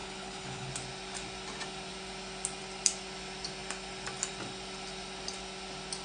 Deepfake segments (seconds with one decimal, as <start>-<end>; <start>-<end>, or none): 0.0-0.7